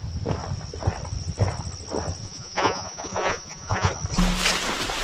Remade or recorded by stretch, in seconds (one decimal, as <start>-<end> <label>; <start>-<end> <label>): 0.0-2.2 recorded; 2.2-3.9 remade; 3.9-5.0 recorded